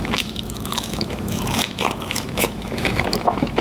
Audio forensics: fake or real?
fake